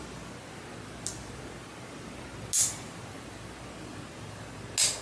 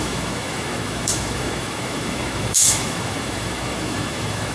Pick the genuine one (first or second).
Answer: first